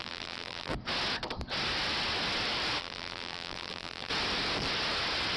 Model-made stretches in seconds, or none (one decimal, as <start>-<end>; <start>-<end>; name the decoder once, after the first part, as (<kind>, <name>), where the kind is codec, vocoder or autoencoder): 0.0-0.7 (vocoder, BigVGAN v2); 2.8-4.1